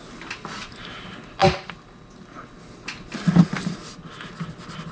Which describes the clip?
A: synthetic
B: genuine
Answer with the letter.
B